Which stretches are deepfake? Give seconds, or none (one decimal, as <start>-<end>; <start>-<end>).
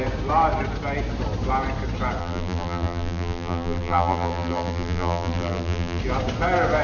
2.2-6.0